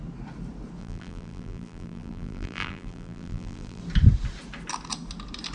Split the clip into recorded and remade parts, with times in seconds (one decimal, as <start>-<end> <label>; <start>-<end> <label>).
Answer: 0.0-0.8 recorded; 0.8-3.8 remade; 3.8-5.5 recorded